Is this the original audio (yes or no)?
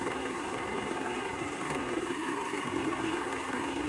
no